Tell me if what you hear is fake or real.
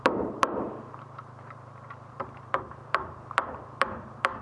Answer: fake